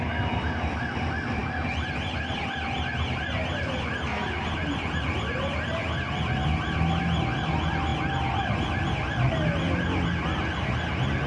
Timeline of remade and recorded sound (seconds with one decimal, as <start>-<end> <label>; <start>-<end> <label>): 0.0-11.3 recorded